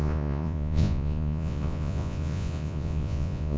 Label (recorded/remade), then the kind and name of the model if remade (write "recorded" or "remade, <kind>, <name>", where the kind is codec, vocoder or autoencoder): remade, vocoder, Vocos